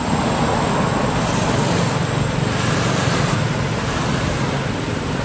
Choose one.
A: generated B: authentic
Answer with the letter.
B